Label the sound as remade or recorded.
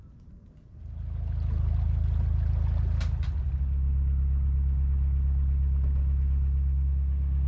recorded